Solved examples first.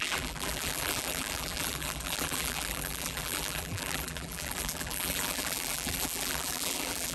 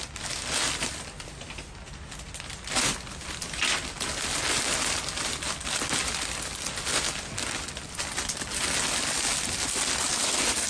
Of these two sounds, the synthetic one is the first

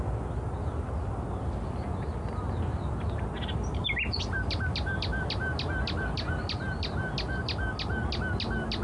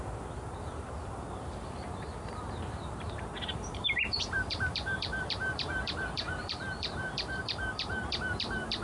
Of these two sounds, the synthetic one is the second